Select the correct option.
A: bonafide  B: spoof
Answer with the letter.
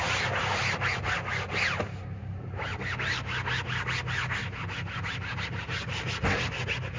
A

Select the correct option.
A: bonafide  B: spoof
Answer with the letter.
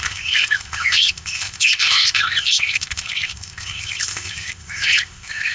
B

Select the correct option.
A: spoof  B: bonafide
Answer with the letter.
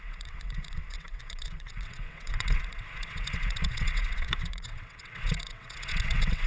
A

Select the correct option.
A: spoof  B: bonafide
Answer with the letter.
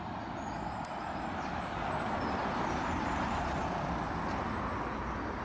B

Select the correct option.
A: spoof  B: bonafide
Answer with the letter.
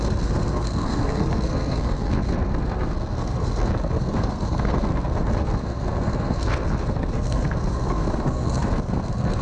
A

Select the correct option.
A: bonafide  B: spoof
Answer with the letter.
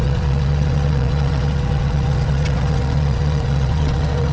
B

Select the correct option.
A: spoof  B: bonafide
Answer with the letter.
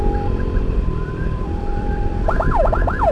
A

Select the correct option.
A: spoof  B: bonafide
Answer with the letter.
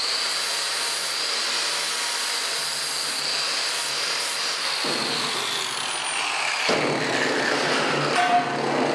B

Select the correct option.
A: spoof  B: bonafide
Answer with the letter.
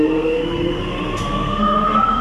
A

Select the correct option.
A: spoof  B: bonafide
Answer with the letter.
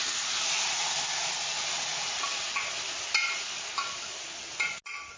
B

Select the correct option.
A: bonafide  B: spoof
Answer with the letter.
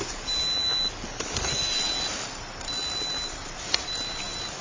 B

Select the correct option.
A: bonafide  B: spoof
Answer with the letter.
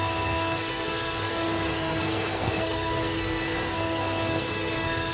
B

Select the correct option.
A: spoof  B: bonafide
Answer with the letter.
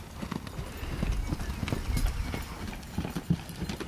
B